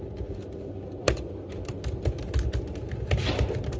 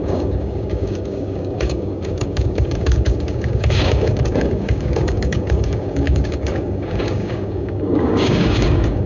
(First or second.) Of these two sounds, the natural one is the first